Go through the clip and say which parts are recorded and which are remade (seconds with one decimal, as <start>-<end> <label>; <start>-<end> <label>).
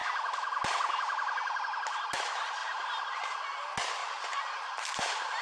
0.0-2.6 recorded; 2.6-3.1 remade; 3.1-4.0 recorded; 4.0-5.4 remade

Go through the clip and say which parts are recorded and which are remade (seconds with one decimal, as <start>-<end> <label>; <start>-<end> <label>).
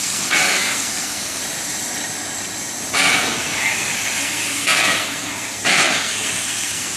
0.0-1.4 remade; 1.4-2.9 recorded; 2.9-7.0 remade